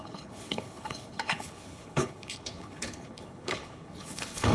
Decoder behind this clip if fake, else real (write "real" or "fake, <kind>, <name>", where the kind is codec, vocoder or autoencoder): fake, codec, HILCodec